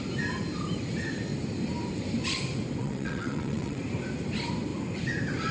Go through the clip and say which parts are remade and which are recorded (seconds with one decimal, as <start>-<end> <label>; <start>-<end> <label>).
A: 0.0-2.8 recorded; 2.8-3.8 remade; 3.8-5.5 recorded